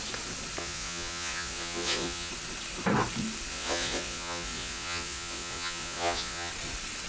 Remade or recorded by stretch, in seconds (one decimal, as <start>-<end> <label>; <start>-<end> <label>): 0.0-0.6 recorded; 0.6-2.3 remade; 2.3-3.5 recorded; 3.5-6.5 remade; 6.5-7.1 recorded